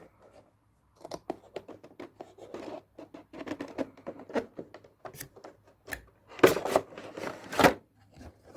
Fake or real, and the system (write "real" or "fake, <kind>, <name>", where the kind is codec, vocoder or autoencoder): real